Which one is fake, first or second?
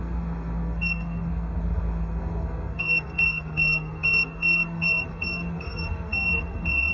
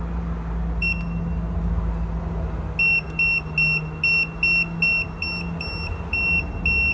first